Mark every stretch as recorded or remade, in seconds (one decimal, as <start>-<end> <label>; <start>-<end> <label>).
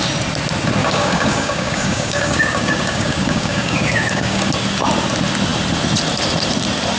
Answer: 0.0-0.8 recorded; 0.8-4.5 remade; 4.5-7.0 recorded